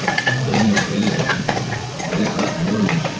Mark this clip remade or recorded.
remade